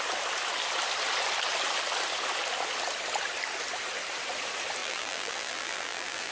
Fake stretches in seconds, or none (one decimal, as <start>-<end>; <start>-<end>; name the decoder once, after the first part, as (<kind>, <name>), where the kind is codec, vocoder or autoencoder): 4.8-6.3 (vocoder, BigVGAN v2)